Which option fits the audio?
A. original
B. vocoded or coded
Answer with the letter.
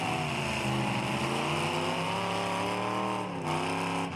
A